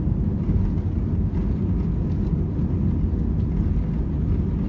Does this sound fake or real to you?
real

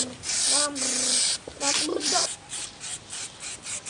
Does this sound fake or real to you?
real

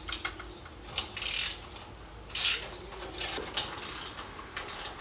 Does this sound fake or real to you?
real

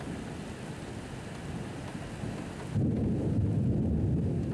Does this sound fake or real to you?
real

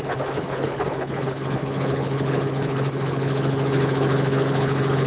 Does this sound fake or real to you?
fake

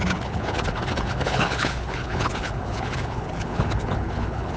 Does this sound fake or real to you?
fake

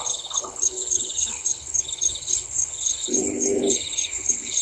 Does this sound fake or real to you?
fake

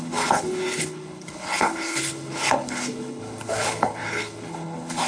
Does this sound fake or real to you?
fake